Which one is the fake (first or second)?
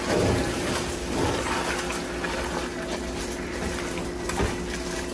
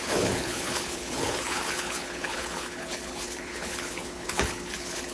second